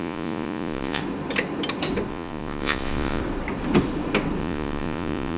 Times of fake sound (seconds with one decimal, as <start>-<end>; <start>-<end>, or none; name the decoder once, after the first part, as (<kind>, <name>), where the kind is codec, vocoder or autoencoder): 0.0-1.0 (vocoder, Vocos); 2.1-3.2; 4.4-5.4

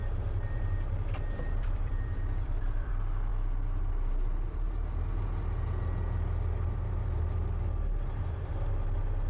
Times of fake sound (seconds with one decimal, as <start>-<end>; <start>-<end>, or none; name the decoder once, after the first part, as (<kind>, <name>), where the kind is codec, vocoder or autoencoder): 0.0-2.9 (vocoder, BigVGAN v2)

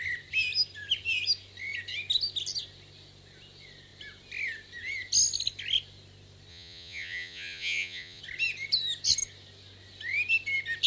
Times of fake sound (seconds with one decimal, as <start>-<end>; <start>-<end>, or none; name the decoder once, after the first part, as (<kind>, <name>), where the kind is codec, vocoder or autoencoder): 6.5-8.2 (vocoder, Vocos)

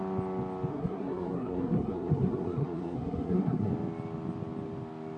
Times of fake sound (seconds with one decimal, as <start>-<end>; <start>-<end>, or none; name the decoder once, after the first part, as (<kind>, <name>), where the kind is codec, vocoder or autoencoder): 0.7-3.7 (codec, SNAC)

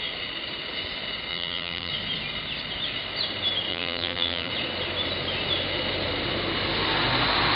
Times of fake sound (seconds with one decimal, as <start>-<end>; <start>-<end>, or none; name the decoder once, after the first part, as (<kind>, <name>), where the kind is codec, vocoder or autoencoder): 1.3-1.9 (vocoder, BigVGAN v2); 3.7-4.5

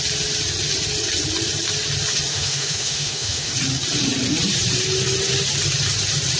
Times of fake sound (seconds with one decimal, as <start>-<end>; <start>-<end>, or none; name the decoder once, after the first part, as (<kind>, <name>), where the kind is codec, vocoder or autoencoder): 2.3-3.5 (autoencoder, DAC-VAE)

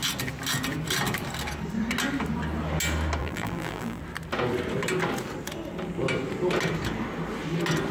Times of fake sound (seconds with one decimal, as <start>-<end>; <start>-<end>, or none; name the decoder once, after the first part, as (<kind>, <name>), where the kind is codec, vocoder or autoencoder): 3.2-4.0 (vocoder, BigVGAN v2)